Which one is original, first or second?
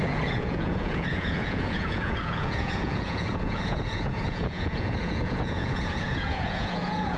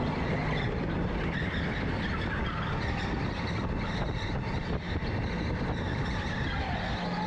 second